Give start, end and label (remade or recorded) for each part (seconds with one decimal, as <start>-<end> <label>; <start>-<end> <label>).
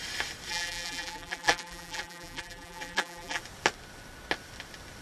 0.0-0.5 recorded; 0.5-3.4 remade; 3.4-5.0 recorded